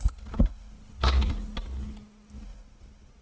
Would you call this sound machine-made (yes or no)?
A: no